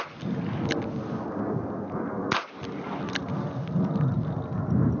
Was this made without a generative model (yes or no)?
yes